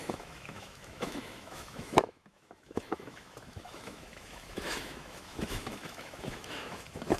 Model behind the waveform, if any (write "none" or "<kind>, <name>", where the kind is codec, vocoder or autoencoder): autoencoder, DAC-VAE